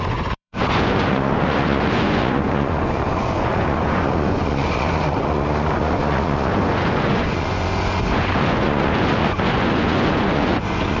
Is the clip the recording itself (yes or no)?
no